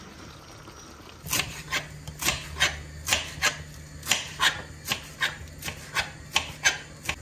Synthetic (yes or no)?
no